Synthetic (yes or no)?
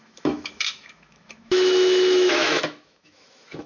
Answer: yes